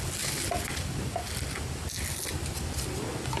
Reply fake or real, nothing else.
real